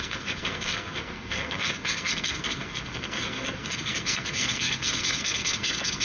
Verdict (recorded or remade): remade